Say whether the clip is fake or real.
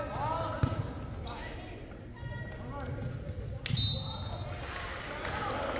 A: real